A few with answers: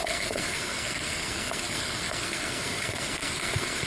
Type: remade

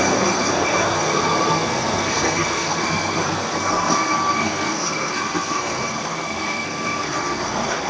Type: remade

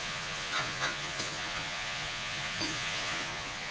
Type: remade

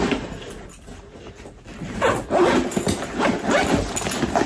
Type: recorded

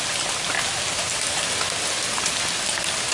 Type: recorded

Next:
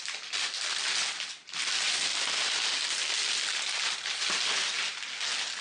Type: recorded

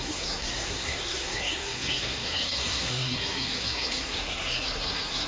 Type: remade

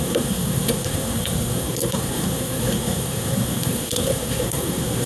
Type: remade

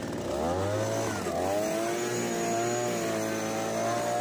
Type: recorded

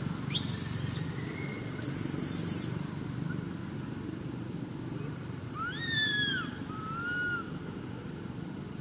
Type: recorded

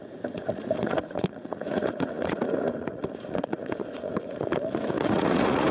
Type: remade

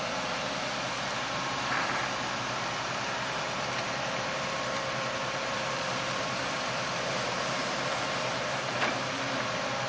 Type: remade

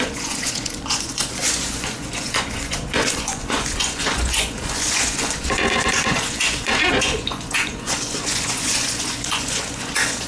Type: remade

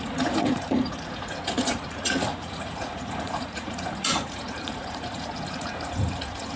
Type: remade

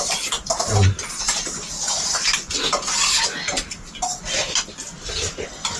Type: recorded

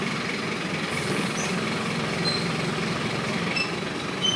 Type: remade